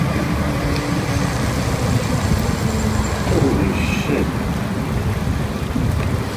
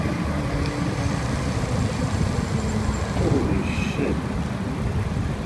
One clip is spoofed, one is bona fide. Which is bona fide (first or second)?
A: first